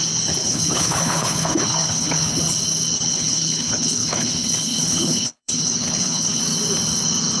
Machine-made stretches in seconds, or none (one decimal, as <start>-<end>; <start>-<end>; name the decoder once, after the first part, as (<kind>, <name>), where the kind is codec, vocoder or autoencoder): 0.4-2.4 (codec, HILCodec); 3.1-6.4